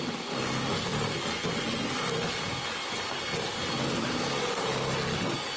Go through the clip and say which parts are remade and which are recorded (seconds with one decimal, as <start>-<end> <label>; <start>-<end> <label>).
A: 0.0-5.6 recorded